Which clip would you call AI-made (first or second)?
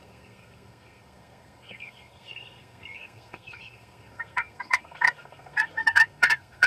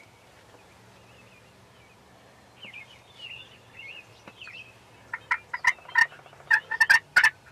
first